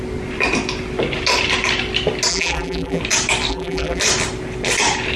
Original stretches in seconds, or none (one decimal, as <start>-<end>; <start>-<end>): 0.0-2.3; 3.0-3.5; 4.0-5.2